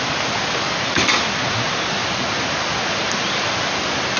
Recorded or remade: recorded